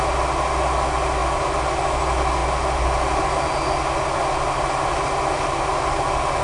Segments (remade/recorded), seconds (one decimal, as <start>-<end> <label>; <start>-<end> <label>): 0.0-6.4 recorded